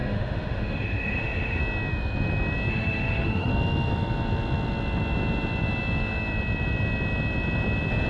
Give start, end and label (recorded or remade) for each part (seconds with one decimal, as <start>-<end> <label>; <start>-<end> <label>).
0.0-1.6 remade; 1.6-2.7 recorded; 2.7-3.5 remade; 3.5-8.1 recorded